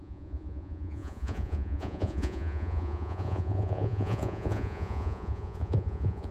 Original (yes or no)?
no